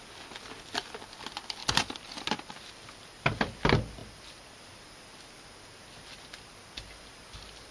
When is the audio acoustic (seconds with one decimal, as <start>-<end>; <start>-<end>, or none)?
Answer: 0.0-7.7